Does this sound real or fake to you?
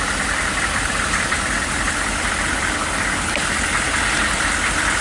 real